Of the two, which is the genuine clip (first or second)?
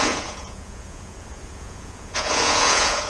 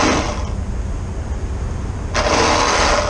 second